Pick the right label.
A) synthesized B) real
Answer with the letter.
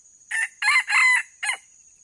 B